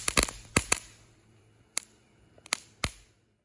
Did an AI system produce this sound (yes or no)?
yes